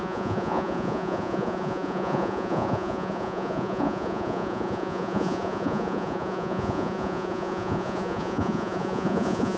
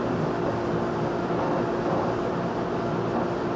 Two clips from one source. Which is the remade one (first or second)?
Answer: first